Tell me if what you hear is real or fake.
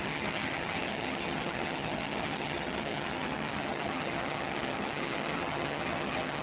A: fake